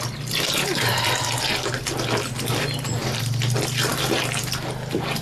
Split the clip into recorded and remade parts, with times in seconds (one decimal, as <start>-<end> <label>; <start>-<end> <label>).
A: 0.0-5.2 recorded